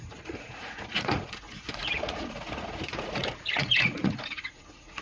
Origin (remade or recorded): remade